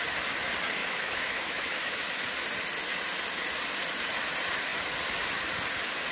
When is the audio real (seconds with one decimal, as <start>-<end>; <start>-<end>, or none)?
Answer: 0.0-0.8; 2.1-6.1